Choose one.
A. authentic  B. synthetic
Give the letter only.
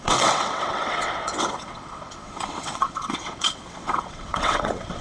B